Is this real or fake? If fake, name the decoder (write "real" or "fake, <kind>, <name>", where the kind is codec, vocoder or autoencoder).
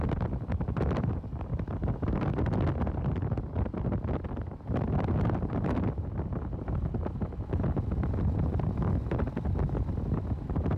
real